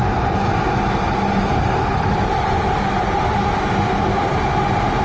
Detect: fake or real real